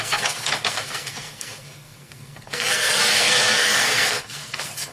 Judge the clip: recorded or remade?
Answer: remade